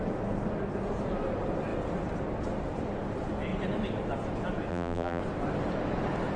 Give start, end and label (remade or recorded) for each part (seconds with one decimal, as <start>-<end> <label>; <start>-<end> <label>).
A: 0.0-4.7 recorded; 4.7-5.2 remade; 5.2-6.4 recorded